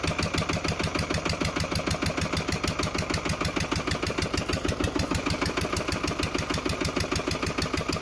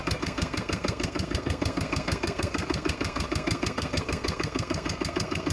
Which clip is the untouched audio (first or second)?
first